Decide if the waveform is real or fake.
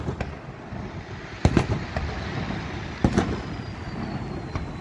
real